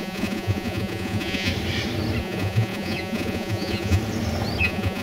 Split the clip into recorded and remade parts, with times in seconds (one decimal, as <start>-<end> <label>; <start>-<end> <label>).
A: 0.0-1.5 remade; 1.5-2.2 recorded; 2.2-4.0 remade; 4.0-4.6 recorded; 4.6-5.0 remade